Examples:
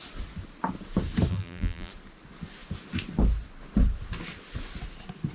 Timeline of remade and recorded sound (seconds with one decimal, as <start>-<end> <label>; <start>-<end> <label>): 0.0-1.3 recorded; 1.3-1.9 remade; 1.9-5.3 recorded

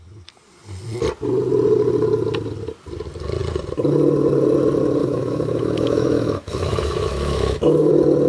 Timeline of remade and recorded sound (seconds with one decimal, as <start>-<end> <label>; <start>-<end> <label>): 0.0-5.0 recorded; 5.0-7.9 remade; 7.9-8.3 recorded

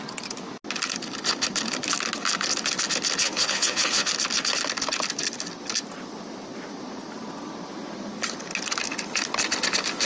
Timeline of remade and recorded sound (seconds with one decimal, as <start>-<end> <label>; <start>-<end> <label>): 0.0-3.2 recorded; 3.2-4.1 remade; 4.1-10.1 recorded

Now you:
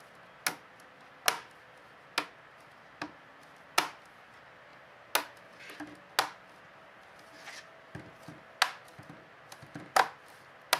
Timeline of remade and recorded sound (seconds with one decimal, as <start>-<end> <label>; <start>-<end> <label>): 0.0-10.8 recorded